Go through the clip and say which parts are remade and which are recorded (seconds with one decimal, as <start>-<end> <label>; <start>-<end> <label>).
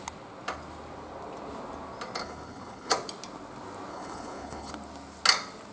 0.0-2.2 recorded; 2.2-2.9 remade; 2.9-3.9 recorded; 3.9-4.7 remade; 4.7-5.7 recorded